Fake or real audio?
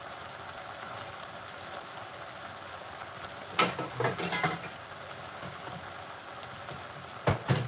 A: real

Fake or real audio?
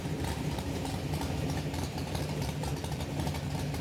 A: fake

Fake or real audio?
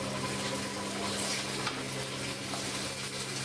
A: real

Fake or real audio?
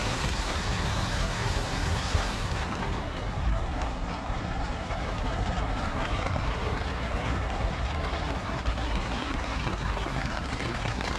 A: fake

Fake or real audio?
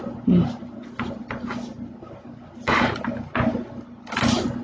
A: real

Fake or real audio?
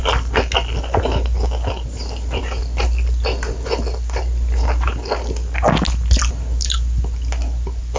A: real